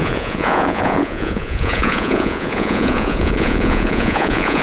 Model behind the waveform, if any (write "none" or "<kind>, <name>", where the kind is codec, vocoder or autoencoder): vocoder, Vocos